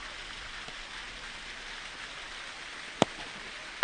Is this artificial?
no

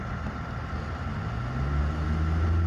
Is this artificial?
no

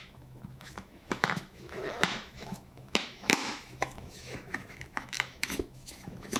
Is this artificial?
yes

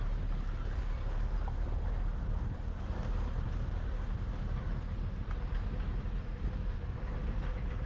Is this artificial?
no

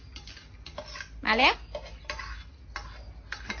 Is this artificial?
no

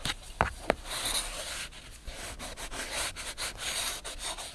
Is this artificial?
no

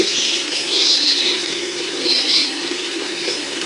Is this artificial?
yes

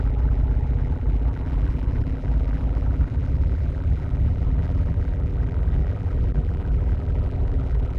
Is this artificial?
yes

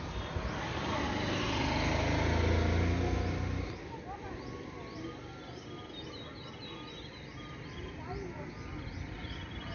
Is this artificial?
no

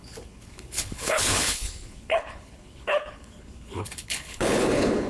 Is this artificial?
yes